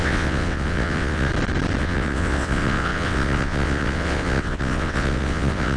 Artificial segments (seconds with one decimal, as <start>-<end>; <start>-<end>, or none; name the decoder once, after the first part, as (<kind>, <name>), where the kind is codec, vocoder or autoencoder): 0.0-1.3 (vocoder, WaveNeXt); 1.8-5.8